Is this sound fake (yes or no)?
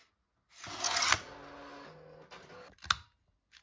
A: no